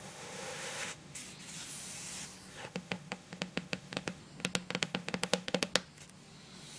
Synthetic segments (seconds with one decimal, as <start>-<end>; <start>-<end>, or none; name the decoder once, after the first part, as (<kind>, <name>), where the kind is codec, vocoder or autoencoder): 0.0-1.2 (autoencoder, DAC-VAE); 2.5-4.2; 4.8-5.7